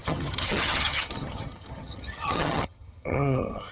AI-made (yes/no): yes